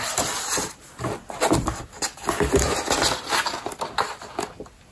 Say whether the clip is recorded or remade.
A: recorded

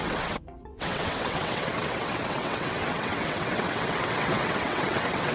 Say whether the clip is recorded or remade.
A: remade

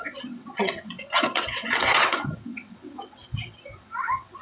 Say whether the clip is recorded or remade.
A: remade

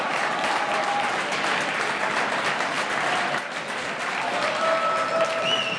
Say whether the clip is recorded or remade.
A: recorded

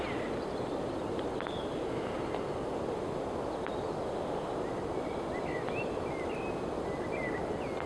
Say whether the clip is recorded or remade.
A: recorded